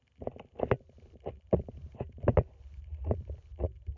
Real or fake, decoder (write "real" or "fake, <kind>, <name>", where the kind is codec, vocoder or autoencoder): real